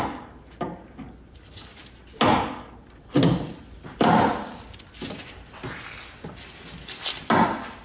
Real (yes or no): yes